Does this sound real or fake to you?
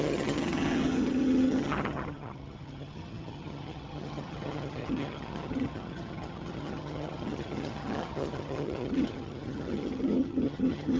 fake